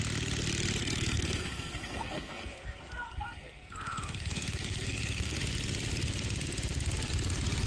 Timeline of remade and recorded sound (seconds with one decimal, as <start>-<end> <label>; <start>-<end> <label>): 0.0-0.8 recorded; 0.8-5.4 remade; 5.4-7.7 recorded